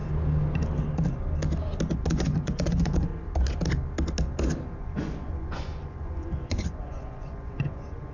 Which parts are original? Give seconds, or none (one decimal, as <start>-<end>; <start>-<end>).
0.0-2.1; 3.1-4.8